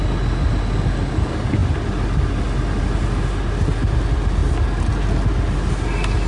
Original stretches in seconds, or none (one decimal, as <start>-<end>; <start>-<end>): 0.0-6.3